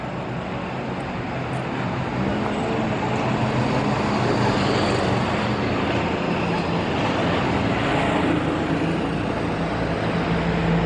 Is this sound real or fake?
real